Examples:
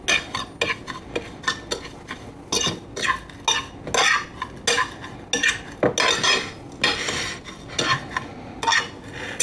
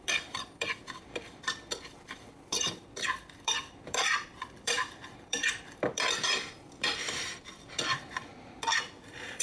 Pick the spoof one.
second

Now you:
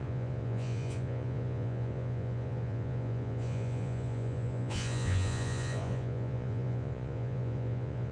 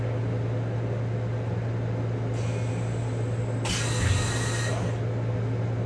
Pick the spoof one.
first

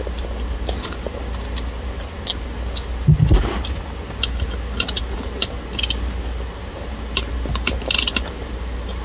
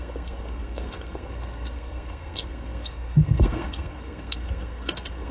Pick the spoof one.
second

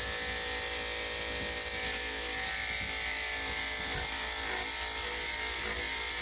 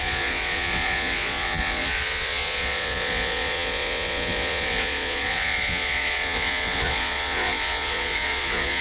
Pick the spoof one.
second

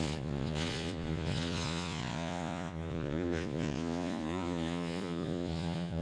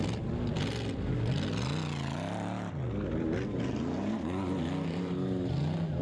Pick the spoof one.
first